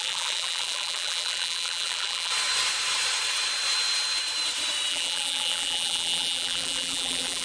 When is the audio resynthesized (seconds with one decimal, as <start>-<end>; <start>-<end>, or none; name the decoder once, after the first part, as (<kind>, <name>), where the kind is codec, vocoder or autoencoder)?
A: 0.0-2.3 (vocoder, BigVGAN v2); 4.9-7.4